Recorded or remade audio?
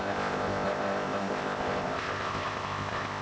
remade